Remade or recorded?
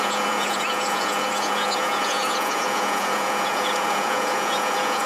remade